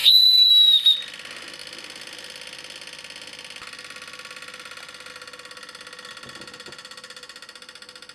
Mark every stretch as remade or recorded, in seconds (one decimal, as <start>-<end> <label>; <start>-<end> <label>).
0.0-0.5 remade; 0.5-8.1 recorded